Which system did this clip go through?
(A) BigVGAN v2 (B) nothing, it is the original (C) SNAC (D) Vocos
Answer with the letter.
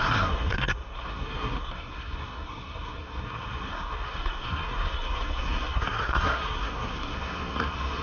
C